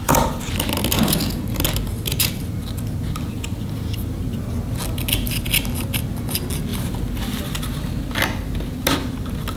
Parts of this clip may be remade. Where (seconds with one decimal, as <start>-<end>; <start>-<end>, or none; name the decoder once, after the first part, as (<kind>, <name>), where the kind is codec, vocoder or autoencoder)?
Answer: 6.7-7.4 (vocoder, BigVGAN v2)